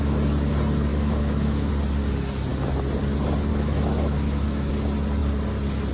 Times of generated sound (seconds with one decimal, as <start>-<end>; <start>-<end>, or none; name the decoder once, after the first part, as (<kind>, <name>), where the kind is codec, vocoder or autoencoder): 0.9-1.7 (autoencoder, DAC-VAE); 3.5-4.7